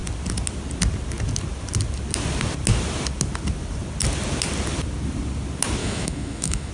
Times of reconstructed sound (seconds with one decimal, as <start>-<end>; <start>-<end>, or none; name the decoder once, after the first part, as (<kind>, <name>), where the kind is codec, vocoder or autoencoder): 5.8-6.7 (autoencoder, DAC-VAE)